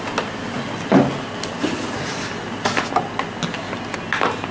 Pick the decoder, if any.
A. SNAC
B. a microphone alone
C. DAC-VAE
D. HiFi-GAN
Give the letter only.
B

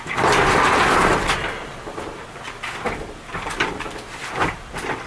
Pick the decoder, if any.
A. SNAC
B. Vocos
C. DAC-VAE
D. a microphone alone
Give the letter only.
D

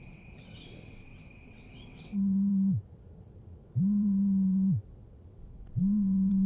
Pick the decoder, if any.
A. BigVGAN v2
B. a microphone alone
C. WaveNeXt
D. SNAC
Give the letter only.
C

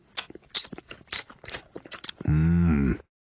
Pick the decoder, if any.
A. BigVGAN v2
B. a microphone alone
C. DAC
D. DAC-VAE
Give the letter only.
B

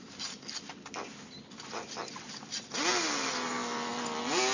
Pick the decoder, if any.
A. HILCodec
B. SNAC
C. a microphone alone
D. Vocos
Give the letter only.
C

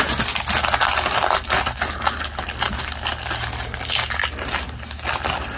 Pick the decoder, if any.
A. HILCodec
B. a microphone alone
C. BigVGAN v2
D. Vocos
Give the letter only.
B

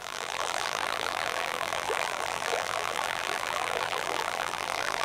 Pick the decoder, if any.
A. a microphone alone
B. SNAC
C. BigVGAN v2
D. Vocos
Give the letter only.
C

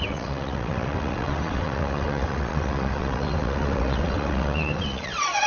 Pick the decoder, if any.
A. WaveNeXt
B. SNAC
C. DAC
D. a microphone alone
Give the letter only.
A